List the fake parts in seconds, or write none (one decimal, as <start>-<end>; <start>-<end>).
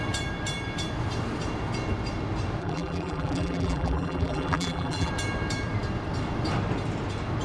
2.6-5.1